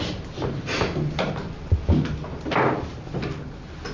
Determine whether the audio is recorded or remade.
recorded